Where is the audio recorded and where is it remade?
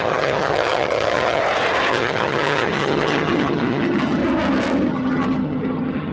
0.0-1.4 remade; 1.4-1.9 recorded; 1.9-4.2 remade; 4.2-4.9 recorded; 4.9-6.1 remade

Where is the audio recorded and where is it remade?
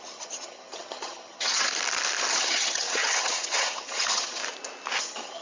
0.0-1.7 remade; 1.7-2.3 recorded; 2.3-4.4 remade; 4.4-5.0 recorded; 5.0-5.4 remade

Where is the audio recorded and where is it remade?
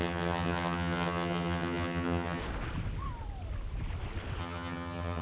0.0-2.4 remade; 2.4-4.4 recorded; 4.4-5.2 remade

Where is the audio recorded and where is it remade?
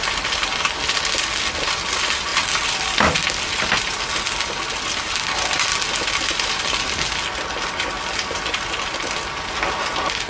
0.0-10.3 recorded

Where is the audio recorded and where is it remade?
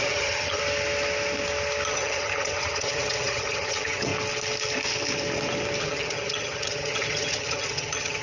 0.0-0.6 remade; 0.6-1.9 recorded; 1.9-4.1 remade; 4.1-5.8 recorded; 5.8-8.2 remade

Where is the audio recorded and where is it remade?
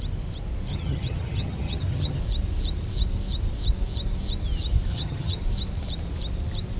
0.0-0.7 recorded; 0.7-2.2 remade; 2.2-4.9 recorded; 4.9-5.4 remade; 5.4-6.8 recorded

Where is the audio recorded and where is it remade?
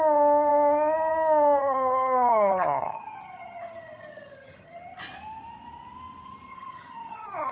0.0-1.6 recorded; 1.6-5.0 remade; 5.0-6.5 recorded; 6.5-7.5 remade